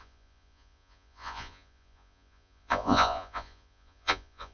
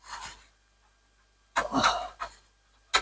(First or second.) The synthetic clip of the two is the first